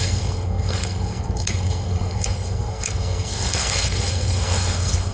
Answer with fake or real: fake